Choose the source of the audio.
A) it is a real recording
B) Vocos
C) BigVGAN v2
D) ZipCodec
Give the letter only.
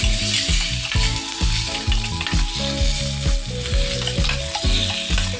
A